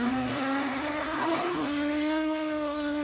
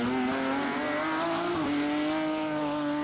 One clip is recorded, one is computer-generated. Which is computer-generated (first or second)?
first